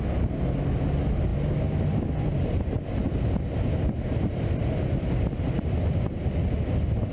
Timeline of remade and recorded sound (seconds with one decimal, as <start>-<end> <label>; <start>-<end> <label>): 0.0-7.1 recorded

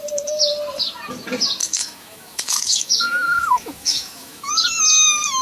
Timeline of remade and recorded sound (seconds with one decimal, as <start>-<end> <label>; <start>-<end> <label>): 0.0-1.6 recorded; 1.6-4.5 remade; 4.5-5.4 recorded

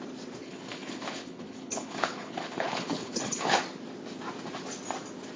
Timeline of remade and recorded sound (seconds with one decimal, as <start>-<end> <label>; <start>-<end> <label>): 0.0-0.4 recorded; 0.4-3.6 remade; 3.6-5.4 recorded

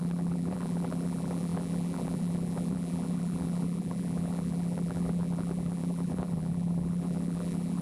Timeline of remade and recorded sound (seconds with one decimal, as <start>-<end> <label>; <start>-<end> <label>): 0.0-7.8 remade